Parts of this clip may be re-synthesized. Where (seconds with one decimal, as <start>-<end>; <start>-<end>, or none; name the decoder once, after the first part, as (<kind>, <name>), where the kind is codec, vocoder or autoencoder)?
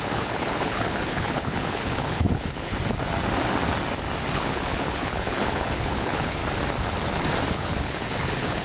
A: 0.0-2.7 (codec, HILCodec); 4.3-6.4; 7.5-8.6